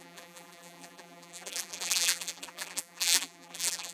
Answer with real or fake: fake